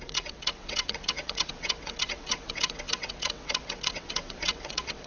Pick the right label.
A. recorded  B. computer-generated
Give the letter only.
B